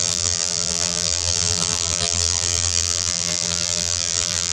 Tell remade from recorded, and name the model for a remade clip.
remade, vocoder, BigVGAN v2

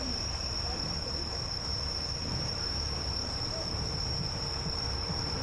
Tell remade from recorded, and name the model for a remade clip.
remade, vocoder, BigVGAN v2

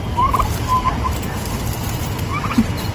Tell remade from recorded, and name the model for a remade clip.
recorded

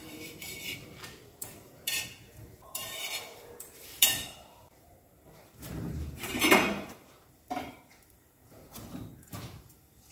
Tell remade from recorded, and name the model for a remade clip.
remade, vocoder, BigVGAN v2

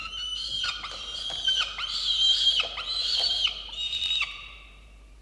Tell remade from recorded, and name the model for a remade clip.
remade, vocoder, BigVGAN v2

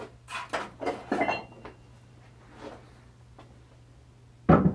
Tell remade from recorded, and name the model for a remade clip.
recorded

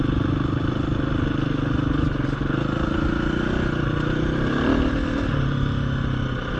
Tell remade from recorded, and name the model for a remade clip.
recorded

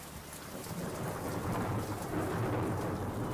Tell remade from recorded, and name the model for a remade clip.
recorded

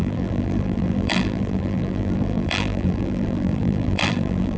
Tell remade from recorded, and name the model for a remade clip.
remade, vocoder, BigVGAN v2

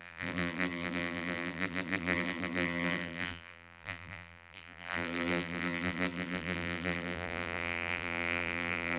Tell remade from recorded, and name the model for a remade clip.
remade, vocoder, BigVGAN v2